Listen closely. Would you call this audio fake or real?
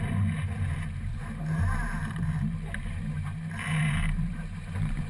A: fake